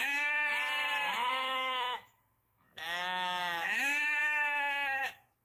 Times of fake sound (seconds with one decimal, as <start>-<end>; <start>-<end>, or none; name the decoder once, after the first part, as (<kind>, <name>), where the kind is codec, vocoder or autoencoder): 0.0-0.5 (autoencoder, DAC-VAE); 1.3-5.4